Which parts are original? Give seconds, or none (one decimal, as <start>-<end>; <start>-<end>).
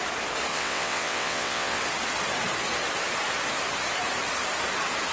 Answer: 0.0-0.5; 1.8-5.1